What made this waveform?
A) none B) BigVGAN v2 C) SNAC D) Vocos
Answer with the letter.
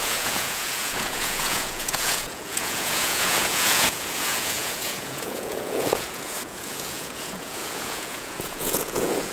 D